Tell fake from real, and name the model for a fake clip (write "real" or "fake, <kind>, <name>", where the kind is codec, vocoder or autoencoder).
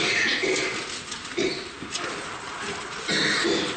real